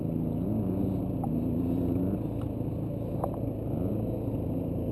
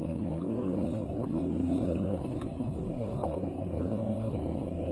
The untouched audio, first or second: first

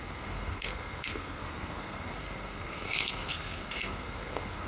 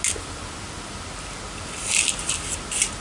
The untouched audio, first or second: second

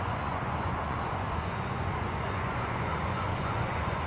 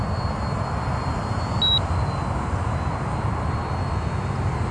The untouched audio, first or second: second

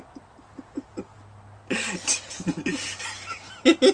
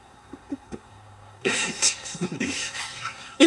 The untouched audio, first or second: first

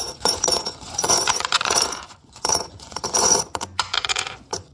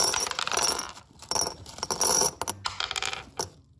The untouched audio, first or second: second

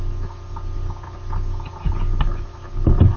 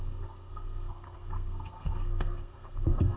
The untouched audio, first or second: first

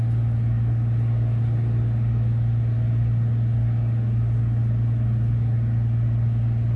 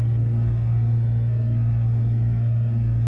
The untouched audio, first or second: first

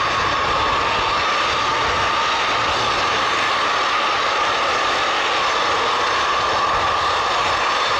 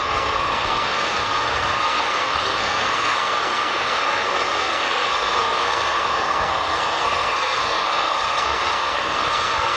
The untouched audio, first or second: first